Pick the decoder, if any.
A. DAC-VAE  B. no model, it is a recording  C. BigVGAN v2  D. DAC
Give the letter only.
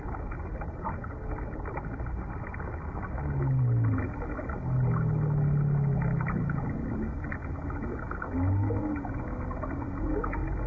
B